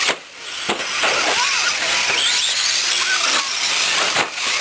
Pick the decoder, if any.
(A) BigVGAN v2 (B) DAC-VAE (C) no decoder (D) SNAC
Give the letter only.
C